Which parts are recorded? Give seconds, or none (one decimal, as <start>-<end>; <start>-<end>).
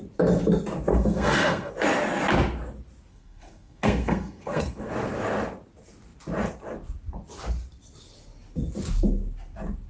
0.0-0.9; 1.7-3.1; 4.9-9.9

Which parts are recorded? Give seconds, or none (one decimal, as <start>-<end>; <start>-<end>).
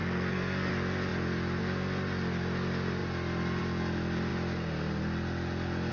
0.7-5.9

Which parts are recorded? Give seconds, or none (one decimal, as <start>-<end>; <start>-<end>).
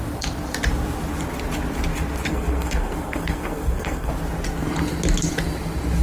0.0-2.3; 4.1-6.0